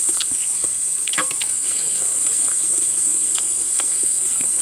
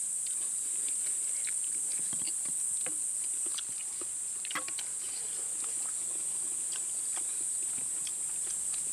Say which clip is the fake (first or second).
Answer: first